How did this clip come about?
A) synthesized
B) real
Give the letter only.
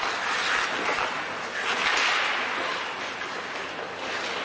B